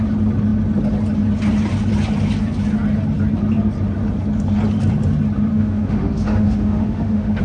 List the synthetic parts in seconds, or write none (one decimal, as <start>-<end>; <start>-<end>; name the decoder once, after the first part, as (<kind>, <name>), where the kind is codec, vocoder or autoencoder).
5.5-7.4 (autoencoder, DAC-VAE)